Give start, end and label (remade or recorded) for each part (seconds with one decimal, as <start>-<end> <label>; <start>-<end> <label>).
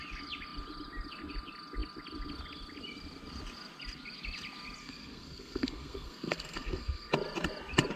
0.0-4.8 recorded; 4.8-7.1 remade; 7.1-8.0 recorded